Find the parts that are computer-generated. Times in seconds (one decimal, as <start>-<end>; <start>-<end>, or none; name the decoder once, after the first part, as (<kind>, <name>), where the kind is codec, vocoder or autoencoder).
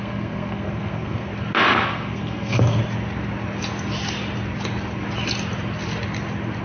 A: 0.0-1.3 (codec, SNAC); 1.9-2.8